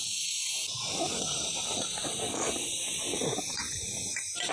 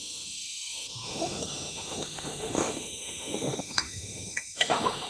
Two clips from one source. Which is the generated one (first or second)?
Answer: second